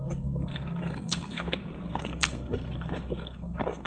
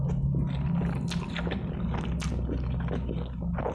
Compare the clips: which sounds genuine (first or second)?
second